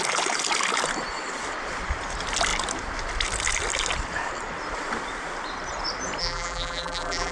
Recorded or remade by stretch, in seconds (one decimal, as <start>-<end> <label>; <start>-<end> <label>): 0.0-6.2 recorded; 6.2-7.3 remade

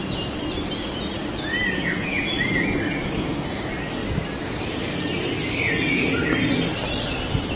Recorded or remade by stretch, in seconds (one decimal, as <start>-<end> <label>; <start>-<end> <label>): 0.0-7.6 recorded

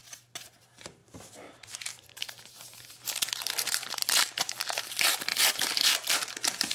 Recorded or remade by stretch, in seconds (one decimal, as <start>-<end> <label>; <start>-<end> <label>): 0.0-0.6 recorded; 0.6-6.7 remade

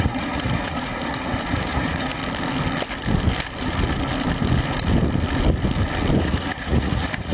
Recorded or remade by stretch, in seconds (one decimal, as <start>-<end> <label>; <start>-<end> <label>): 0.0-2.2 remade; 2.2-6.2 recorded; 6.2-7.3 remade

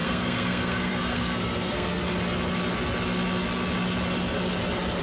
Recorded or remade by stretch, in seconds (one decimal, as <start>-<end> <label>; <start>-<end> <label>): 0.0-2.0 remade; 2.0-5.0 recorded

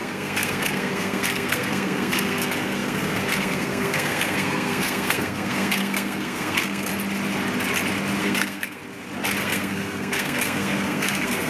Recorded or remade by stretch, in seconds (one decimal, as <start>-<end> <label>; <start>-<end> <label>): 0.0-6.9 remade; 6.9-8.2 recorded; 8.2-8.8 remade; 8.8-9.4 recorded; 9.4-11.5 remade

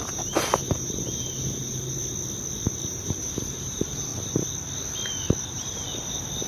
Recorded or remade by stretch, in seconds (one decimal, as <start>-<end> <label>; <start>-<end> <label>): 0.0-1.6 remade; 1.6-2.9 recorded; 2.9-4.1 remade; 4.1-5.5 recorded; 5.5-6.5 remade

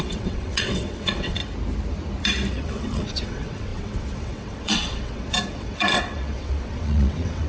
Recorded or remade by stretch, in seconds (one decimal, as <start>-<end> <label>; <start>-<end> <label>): 0.0-1.4 remade; 1.4-2.5 recorded; 2.5-7.5 remade